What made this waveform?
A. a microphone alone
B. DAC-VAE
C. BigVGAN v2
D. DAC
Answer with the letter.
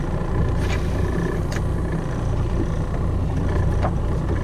A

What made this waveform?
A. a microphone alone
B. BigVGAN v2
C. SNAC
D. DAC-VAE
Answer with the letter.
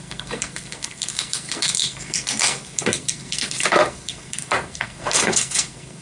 C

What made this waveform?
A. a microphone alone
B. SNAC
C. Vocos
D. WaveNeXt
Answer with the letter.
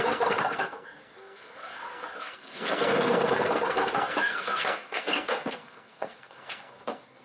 B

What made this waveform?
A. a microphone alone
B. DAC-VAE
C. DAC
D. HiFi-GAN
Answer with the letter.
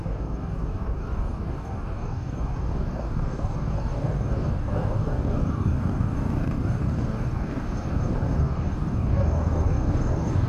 C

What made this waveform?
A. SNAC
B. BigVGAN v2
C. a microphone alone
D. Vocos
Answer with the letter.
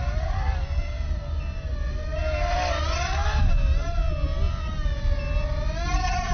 C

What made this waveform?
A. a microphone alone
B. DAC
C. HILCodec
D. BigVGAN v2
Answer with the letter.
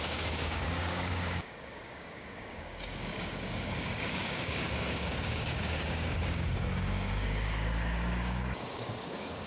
B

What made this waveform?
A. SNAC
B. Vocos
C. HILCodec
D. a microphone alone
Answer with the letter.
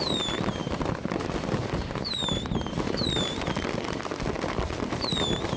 D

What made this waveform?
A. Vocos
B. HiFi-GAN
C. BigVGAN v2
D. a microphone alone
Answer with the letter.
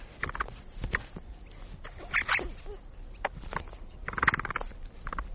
D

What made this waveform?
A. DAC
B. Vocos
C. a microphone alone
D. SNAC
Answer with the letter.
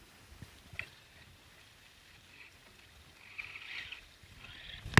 C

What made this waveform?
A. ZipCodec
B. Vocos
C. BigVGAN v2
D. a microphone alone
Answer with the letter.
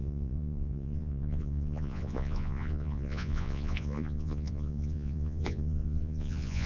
B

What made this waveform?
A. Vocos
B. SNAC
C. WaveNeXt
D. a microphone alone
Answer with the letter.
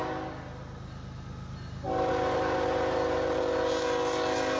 D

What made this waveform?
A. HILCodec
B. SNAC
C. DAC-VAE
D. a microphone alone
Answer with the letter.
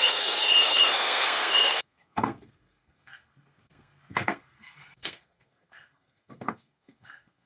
B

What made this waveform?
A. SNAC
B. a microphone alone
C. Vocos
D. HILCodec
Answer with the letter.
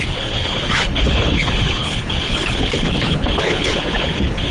D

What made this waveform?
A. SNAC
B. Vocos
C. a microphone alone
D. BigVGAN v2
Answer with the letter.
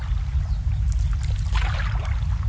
C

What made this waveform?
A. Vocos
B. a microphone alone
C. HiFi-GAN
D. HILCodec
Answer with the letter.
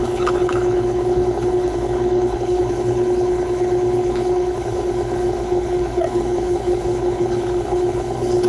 D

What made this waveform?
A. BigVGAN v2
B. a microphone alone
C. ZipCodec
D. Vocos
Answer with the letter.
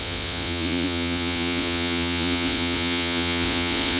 D